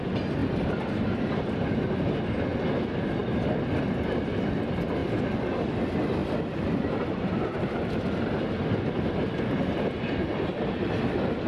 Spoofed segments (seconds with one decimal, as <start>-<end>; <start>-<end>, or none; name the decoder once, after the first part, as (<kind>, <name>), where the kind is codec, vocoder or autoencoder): 0.4-2.2 (vocoder, BigVGAN v2); 6.2-11.5